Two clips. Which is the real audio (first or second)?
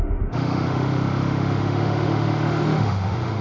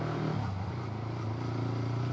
second